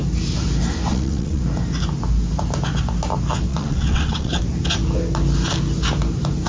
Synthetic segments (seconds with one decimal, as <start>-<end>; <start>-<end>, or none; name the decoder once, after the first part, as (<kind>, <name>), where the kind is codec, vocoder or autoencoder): 0.9-1.4 (vocoder, WaveNeXt); 3.5-4.4